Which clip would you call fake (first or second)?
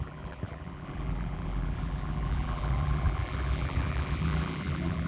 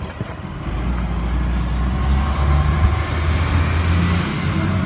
first